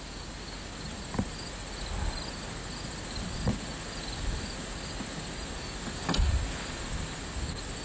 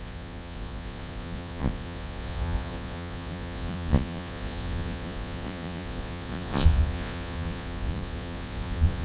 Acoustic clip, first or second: first